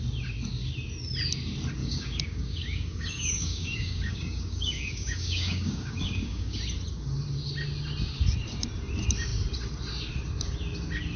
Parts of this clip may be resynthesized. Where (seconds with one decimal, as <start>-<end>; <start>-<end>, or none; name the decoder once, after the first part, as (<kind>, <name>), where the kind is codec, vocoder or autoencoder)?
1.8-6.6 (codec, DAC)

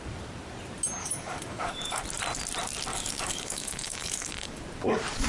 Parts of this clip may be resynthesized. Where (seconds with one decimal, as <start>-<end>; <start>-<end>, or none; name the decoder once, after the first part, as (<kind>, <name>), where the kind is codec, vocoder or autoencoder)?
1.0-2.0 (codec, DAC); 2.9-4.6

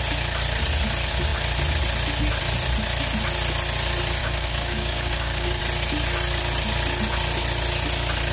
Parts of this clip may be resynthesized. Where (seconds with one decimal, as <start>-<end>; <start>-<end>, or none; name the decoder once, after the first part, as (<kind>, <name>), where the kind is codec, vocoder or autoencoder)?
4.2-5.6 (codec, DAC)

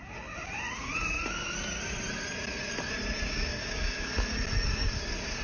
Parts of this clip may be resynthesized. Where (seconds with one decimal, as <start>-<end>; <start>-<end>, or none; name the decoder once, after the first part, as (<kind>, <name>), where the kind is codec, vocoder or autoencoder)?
3.3-4.1 (codec, DAC)

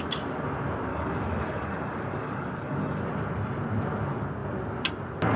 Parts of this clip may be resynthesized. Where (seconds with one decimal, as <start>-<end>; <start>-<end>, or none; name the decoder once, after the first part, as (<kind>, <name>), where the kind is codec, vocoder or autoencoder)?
0.9-3.0 (codec, DAC)

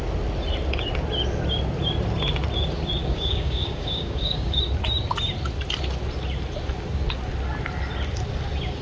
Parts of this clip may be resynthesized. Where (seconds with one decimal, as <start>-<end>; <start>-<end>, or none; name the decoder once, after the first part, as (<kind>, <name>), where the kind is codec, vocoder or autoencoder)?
3.0-4.6 (codec, DAC)

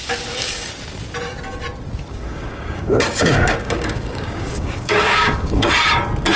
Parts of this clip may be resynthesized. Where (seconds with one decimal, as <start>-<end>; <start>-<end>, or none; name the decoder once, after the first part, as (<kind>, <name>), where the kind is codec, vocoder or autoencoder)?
0.0-0.7 (codec, DAC); 2.1-5.7